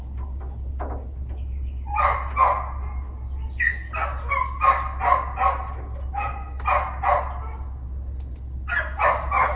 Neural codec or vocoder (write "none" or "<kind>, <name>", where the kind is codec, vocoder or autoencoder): none